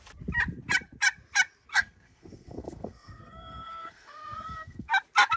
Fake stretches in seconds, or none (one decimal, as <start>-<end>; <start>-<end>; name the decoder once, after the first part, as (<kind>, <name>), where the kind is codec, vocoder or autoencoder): 1.7-4.9 (codec, SNAC)